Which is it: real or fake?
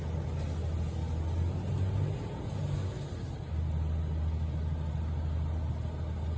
real